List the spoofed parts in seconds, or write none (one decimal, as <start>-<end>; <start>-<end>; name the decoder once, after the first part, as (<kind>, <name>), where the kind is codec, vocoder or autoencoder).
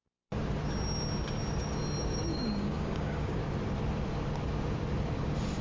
2.0-3.4 (codec, DAC)